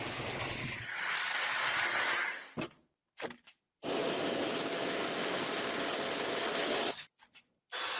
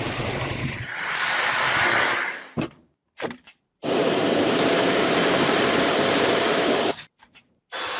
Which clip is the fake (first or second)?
second